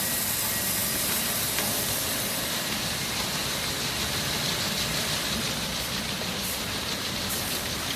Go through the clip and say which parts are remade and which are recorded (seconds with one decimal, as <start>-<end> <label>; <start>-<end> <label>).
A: 0.0-8.0 recorded